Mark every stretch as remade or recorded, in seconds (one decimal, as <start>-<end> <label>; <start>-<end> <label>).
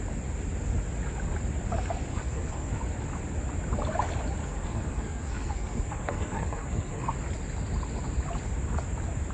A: 0.0-2.1 recorded; 2.1-2.7 remade; 2.7-4.4 recorded; 4.4-7.1 remade; 7.1-9.3 recorded